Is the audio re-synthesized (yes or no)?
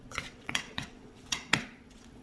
yes